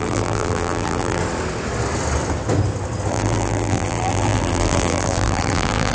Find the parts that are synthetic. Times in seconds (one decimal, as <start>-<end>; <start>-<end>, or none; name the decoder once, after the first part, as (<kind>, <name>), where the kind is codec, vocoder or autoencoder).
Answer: 0.0-1.2 (vocoder, BigVGAN v2); 3.1-5.9